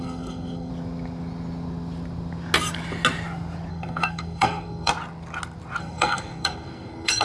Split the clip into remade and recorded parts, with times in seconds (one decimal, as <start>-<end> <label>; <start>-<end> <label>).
0.0-0.7 remade; 0.7-3.7 recorded; 3.7-4.9 remade; 4.9-5.8 recorded; 5.8-7.2 remade